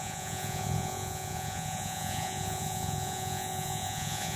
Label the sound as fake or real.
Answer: fake